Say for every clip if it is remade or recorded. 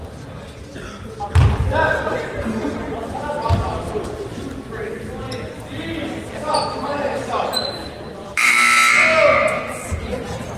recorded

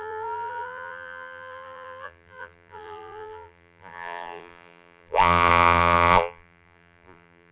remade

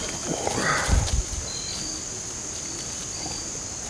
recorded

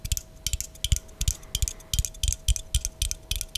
recorded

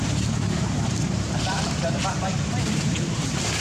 remade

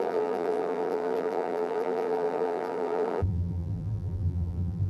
remade